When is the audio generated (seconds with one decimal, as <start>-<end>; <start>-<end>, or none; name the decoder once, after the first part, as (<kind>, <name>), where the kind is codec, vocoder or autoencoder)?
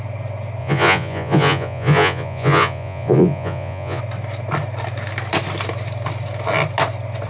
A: 0.6-4.0 (vocoder, Vocos)